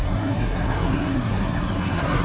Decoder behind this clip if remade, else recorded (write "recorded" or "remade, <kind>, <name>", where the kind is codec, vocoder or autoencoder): remade, codec, SNAC